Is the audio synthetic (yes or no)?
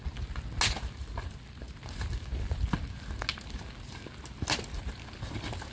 no